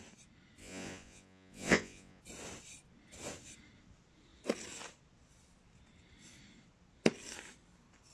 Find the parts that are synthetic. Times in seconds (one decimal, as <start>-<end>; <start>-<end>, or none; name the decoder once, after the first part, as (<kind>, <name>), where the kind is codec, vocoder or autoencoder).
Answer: 0.6-2.2 (vocoder, Vocos)

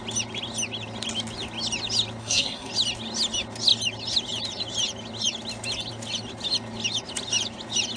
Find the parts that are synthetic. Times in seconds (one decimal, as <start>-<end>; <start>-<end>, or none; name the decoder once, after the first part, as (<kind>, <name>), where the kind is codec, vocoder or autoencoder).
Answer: 2.2-2.7 (codec, SNAC)

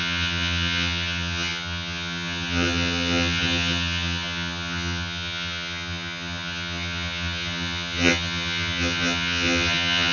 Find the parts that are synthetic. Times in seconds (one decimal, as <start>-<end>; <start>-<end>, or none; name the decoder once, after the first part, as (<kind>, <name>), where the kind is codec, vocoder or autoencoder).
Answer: 0.0-10.1 (vocoder, HiFi-GAN)

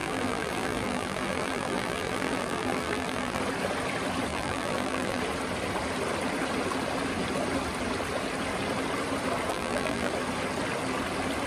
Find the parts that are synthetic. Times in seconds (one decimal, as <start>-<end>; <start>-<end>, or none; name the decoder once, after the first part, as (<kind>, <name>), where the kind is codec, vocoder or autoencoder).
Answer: 0.0-3.4 (vocoder, BigVGAN v2); 4.3-5.2; 9.5-10.1